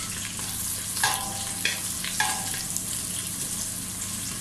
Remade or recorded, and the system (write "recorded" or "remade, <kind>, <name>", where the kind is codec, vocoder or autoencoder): recorded